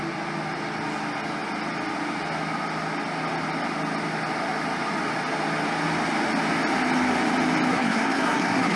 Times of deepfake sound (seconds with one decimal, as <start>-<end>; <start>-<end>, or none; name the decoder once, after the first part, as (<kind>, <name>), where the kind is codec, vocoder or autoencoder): 7.7-8.8 (codec, SNAC)